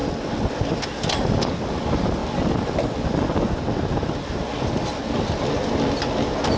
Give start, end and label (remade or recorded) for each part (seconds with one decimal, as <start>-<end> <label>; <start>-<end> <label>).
0.0-6.6 recorded